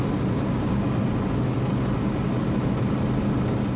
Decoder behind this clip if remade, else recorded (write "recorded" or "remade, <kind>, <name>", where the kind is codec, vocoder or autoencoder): recorded